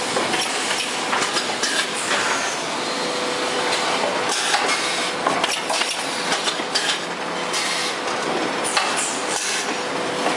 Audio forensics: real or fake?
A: real